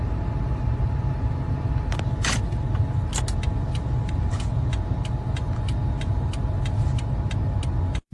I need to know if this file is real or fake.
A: real